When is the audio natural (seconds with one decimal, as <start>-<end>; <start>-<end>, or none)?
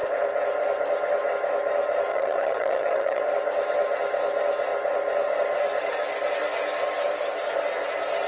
0.0-2.1; 3.2-8.3